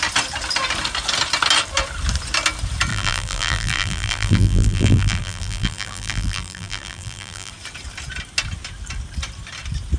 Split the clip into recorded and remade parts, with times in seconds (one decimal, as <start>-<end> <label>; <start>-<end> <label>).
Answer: 0.0-2.9 recorded; 2.9-7.5 remade; 7.5-10.0 recorded